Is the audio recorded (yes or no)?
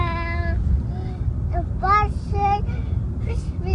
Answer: yes